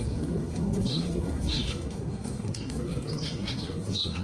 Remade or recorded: remade